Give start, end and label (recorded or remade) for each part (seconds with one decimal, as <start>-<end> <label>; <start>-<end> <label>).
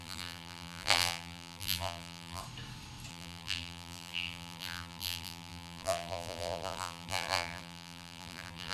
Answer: 0.0-2.4 remade; 2.4-3.1 recorded; 3.1-8.7 remade